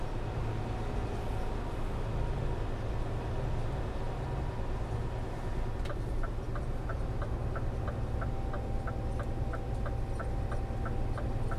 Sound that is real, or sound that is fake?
real